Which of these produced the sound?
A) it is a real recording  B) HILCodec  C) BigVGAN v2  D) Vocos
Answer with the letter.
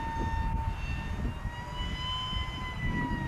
A